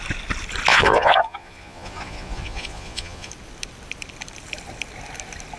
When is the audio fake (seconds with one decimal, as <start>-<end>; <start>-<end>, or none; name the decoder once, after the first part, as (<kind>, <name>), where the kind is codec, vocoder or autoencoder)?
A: 0.7-3.3 (vocoder, Vocos)